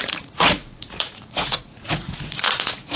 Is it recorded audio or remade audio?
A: remade